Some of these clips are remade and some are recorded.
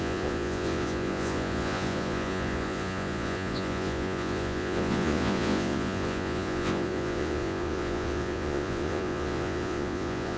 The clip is remade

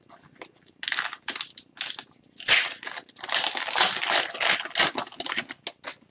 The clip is recorded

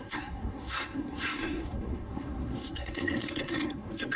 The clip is remade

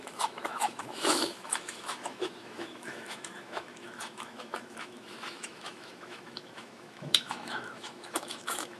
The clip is remade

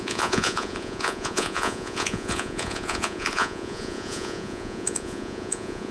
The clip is remade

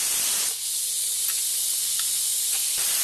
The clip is recorded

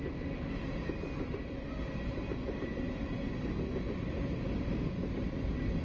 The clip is recorded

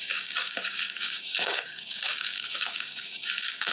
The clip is remade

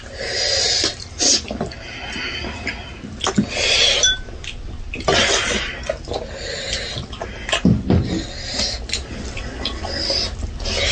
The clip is recorded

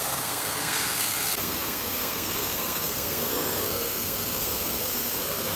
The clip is remade